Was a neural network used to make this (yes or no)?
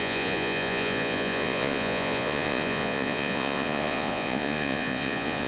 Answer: yes